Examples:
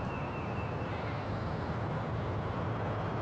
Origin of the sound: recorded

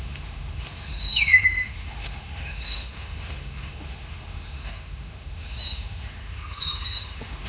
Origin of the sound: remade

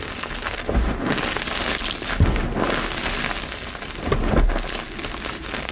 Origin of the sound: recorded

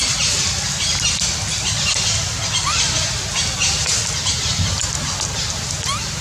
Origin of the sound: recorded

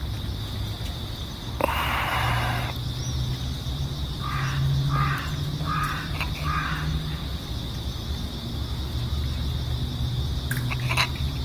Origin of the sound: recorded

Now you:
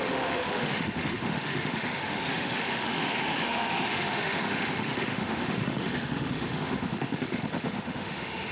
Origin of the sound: remade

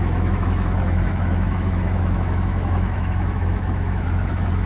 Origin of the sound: remade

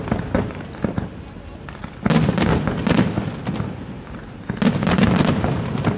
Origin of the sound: recorded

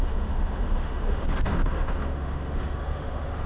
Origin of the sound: remade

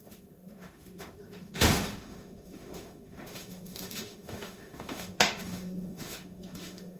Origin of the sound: remade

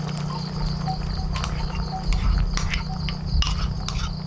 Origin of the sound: recorded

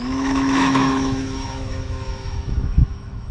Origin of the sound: remade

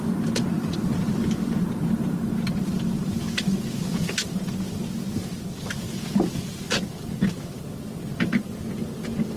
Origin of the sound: recorded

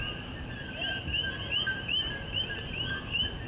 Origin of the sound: recorded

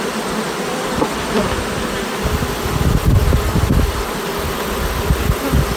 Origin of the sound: recorded